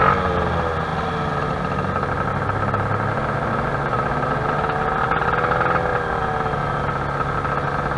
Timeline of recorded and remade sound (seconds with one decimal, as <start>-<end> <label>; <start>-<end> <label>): 0.0-8.0 recorded